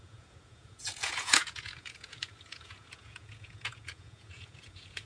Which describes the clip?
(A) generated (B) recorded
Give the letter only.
A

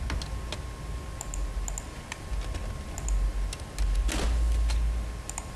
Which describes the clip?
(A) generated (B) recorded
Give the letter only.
B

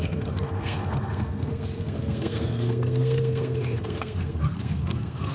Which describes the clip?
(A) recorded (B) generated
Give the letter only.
B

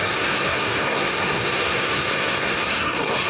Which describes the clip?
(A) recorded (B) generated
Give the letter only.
B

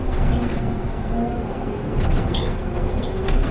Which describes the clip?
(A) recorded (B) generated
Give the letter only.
B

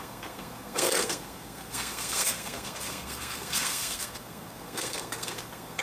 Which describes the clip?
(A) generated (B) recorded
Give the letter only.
A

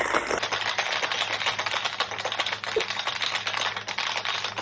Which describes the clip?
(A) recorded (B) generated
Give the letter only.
A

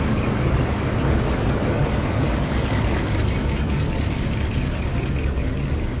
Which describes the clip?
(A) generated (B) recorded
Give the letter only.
A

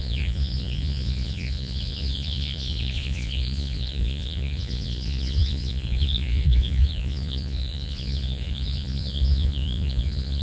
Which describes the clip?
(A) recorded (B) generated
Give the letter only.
B